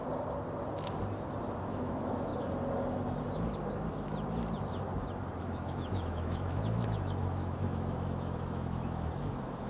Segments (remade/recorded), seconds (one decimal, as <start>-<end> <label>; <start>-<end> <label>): 0.0-1.6 recorded; 1.6-2.3 remade; 2.3-5.4 recorded; 5.4-9.7 remade

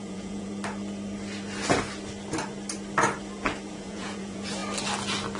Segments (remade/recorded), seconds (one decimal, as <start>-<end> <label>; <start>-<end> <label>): 0.0-0.5 remade; 0.5-3.7 recorded; 3.7-4.6 remade; 4.6-5.4 recorded

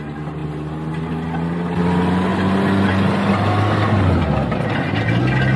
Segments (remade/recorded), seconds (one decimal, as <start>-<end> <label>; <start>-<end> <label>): 0.0-5.6 recorded

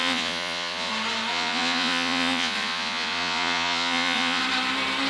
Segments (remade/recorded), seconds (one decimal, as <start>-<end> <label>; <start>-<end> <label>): 0.0-0.9 remade; 0.9-1.3 recorded; 1.3-4.4 remade; 4.4-5.1 recorded

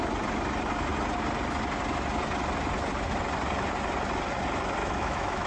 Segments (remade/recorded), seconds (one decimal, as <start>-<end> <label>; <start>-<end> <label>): 0.0-4.8 recorded; 4.8-5.5 remade